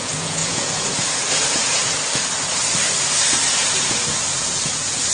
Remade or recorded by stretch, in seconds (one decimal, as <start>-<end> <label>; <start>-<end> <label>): 0.0-1.8 remade; 1.8-3.5 recorded; 3.5-5.1 remade